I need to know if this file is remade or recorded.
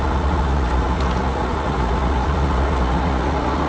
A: remade